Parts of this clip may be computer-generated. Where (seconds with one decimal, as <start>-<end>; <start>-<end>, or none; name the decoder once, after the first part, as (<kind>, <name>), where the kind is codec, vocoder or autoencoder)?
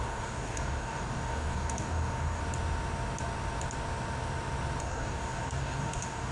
0.0-2.4 (codec, DAC); 4.8-6.3